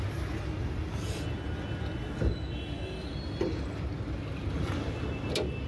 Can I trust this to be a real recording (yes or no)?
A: yes